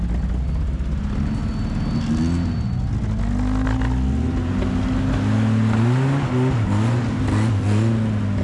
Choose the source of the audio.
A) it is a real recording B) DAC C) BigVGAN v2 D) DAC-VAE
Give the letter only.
A